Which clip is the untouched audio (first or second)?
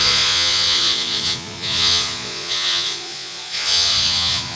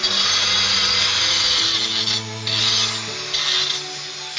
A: second